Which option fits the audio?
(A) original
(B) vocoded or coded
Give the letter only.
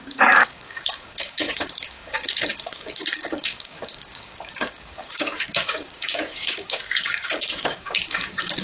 B